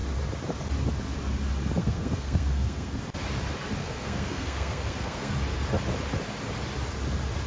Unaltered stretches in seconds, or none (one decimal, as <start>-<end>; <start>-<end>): 0.0-1.8; 3.0-3.8; 5.3-7.5